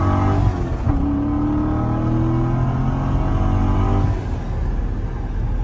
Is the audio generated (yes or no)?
no